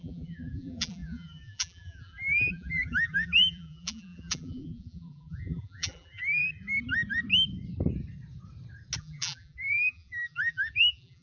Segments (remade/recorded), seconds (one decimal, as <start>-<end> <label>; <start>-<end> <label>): 0.0-6.4 remade; 6.4-9.0 recorded; 9.0-11.2 remade